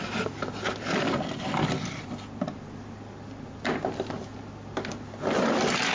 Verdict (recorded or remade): recorded